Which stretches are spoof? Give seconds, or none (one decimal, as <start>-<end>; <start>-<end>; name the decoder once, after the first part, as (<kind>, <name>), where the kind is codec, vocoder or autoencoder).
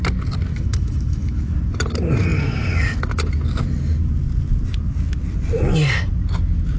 0.5-1.4 (autoencoder, DAC-VAE)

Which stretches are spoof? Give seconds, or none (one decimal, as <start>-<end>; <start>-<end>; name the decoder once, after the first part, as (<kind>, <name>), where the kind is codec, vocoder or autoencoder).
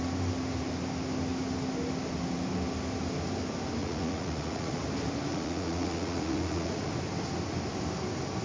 3.8-4.8 (vocoder, Vocos); 5.3-6.9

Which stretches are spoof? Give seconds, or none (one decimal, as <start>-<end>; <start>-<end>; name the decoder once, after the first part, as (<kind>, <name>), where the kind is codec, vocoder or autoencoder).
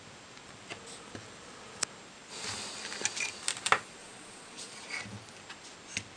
4.0-5.0 (vocoder, Vocos)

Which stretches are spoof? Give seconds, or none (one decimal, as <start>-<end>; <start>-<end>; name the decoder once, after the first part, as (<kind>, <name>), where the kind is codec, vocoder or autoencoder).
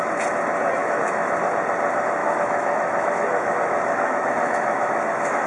0.8-1.5 (autoencoder, DAC-VAE); 2.2-5.5